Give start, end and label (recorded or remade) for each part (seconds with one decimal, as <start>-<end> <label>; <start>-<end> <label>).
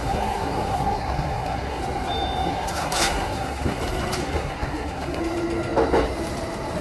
0.0-1.8 remade; 1.8-2.5 recorded; 2.5-3.8 remade; 3.8-4.2 recorded; 4.2-5.2 remade; 5.2-6.8 recorded